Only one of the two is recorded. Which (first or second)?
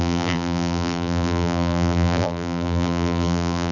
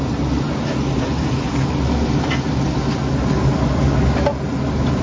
second